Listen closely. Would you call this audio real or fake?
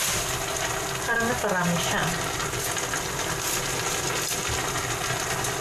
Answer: real